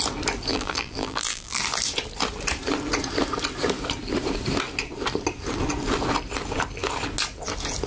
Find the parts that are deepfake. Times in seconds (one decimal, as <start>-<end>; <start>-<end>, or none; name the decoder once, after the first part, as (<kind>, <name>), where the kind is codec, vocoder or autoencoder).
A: 0.5-1.6 (vocoder, BigVGAN v2)